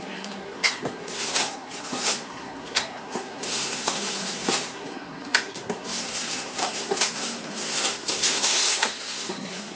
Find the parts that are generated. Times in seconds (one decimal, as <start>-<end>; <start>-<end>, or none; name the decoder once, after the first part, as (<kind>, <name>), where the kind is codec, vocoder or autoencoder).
0.0-9.8 (codec, SNAC)